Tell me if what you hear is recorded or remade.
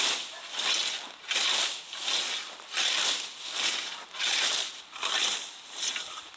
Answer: recorded